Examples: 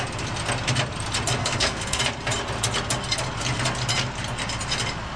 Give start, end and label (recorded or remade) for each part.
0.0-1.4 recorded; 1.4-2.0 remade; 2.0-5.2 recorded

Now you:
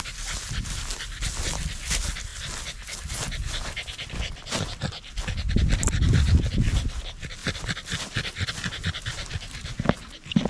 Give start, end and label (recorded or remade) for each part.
0.0-10.5 recorded

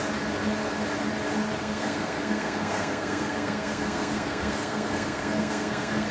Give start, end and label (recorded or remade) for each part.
0.0-1.6 recorded; 1.6-6.1 remade